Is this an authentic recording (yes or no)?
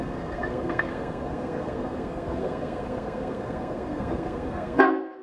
no